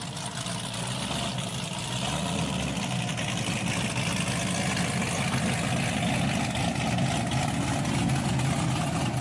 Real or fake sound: real